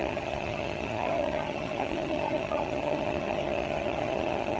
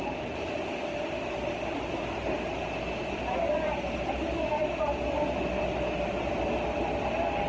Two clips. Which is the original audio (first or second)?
second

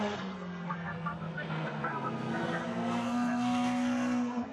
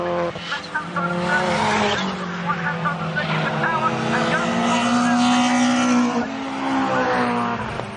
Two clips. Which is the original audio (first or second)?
second